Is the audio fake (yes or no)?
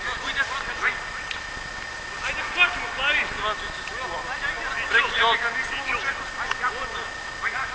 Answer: no